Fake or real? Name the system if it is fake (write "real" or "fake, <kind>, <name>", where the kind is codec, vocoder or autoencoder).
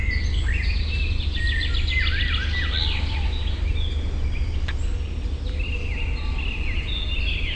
real